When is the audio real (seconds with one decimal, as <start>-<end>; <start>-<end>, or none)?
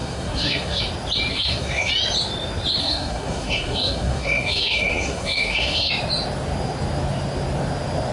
0.8-1.3; 1.9-2.8; 5.9-8.1